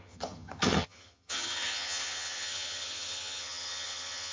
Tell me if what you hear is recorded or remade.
remade